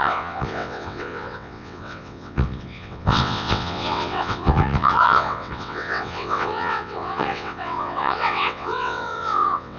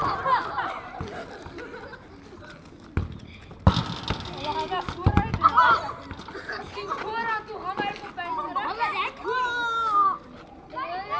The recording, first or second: second